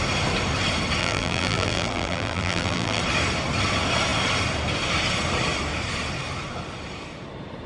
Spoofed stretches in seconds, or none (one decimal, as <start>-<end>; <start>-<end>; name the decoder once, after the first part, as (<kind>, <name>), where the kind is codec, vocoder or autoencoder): 1.0-3.0 (vocoder, BigVGAN v2)